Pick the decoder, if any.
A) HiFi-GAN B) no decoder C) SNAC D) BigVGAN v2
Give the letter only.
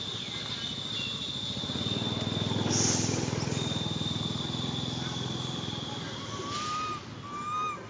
B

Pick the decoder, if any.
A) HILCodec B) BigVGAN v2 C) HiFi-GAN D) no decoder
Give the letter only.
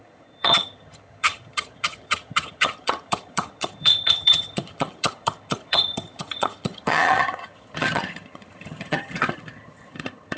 C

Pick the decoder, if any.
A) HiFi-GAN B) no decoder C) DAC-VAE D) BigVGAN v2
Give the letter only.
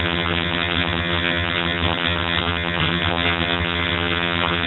A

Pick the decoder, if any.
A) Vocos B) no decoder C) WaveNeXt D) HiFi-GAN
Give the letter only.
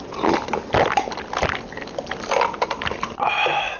B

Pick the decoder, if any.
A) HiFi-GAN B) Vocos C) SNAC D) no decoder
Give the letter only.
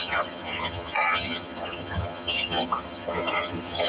A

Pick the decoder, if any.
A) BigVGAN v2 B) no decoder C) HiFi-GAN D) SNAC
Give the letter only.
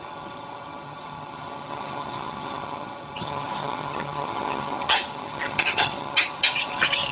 C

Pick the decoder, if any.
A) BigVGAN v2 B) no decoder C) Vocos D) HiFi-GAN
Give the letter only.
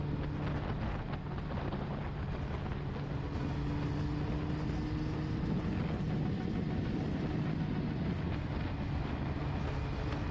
B